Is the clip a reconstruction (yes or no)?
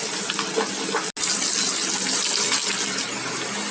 no